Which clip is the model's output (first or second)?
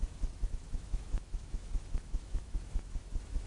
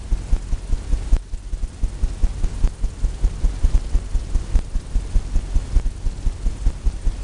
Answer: first